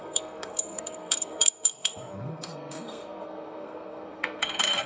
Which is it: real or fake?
fake